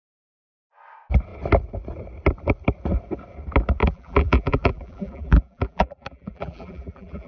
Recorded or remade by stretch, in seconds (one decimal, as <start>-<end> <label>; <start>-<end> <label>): 0.0-3.8 recorded; 3.8-7.3 remade